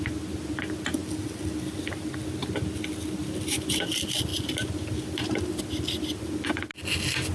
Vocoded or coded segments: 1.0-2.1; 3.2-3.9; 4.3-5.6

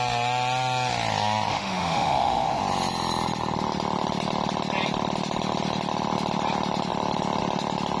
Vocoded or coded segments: 1.5-2.6

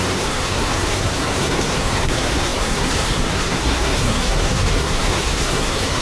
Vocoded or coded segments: 0.0-6.0

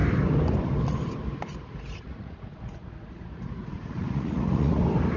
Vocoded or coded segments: 1.7-4.8

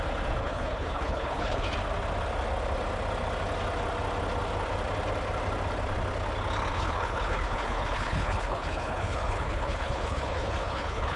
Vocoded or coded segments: 0.4-1.7; 6.7-11.2